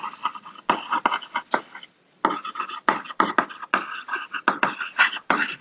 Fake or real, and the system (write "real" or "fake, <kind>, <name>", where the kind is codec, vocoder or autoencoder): real